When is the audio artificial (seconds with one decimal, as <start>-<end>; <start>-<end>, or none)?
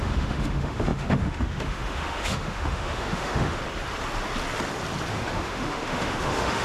0.0-3.6; 5.1-6.6